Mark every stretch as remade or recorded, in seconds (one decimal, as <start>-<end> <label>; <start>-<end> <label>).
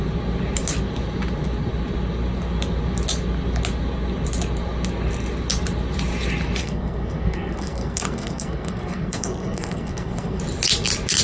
0.0-6.6 recorded; 6.6-10.4 remade; 10.4-11.2 recorded